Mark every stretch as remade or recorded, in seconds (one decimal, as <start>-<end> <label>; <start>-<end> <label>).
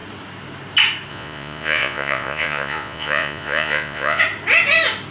0.0-1.1 recorded; 1.1-4.2 remade; 4.2-5.1 recorded